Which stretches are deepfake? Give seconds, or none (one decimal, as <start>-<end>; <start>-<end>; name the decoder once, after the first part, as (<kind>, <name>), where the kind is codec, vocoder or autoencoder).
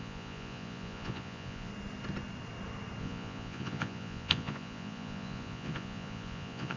0.0-1.7 (vocoder, Vocos); 3.0-6.8